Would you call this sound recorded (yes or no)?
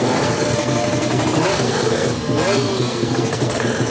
no